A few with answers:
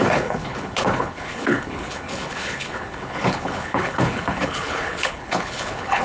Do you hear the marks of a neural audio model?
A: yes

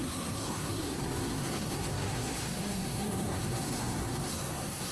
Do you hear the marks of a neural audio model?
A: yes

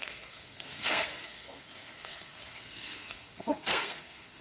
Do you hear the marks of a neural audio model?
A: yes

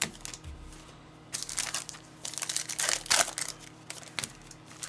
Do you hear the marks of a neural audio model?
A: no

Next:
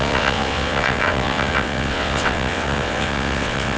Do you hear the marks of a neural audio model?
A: yes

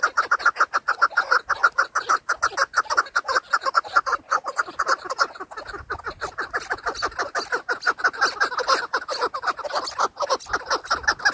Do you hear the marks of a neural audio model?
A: no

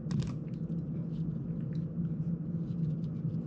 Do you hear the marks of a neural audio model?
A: no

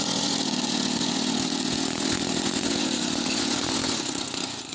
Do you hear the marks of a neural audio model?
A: yes